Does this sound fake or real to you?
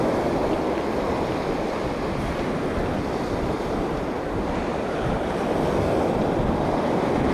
real